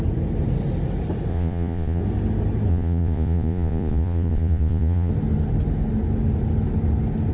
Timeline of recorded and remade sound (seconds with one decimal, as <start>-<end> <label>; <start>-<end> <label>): 0.0-1.3 recorded; 1.3-2.0 remade; 2.0-2.7 recorded; 2.7-5.1 remade; 5.1-7.3 recorded